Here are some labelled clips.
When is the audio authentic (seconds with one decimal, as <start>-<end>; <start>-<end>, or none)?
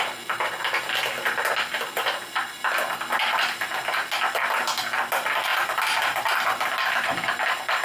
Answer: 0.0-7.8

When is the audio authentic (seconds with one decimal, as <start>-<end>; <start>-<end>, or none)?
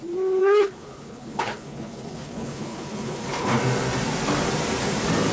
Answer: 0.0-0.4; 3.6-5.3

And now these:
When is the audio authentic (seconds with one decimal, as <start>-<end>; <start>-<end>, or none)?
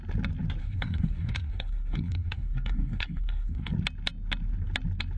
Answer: 0.0-0.6; 3.7-5.2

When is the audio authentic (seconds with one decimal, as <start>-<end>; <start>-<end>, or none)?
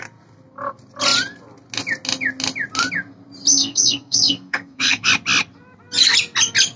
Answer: 0.0-3.5; 5.1-6.8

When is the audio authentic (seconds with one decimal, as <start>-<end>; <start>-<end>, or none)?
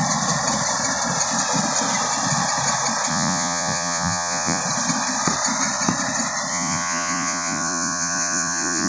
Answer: 0.0-3.1; 4.6-6.5